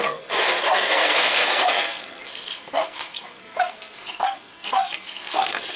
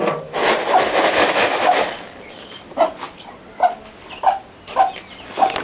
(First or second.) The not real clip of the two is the first